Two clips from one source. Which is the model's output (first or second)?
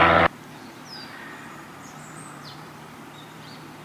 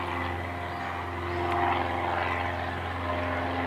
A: first